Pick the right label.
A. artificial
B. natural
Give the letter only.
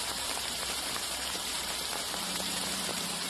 A